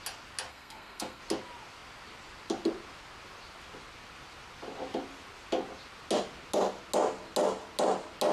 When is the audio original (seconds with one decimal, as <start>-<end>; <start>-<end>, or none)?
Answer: 0.0-0.5; 1.2-8.3

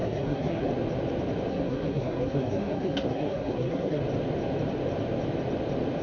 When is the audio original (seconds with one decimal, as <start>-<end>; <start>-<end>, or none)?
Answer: 0.7-1.5; 4.0-6.0

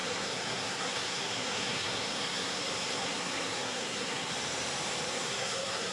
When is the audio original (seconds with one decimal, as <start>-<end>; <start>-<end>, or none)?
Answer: 4.3-5.1

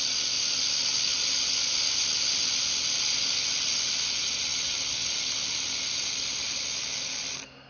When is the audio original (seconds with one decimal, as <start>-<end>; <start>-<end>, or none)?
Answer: 0.0-7.7

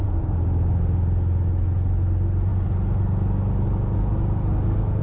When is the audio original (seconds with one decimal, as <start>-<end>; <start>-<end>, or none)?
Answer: 0.0-5.0

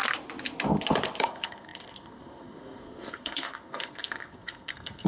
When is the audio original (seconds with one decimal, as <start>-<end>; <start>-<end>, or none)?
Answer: 0.0-1.2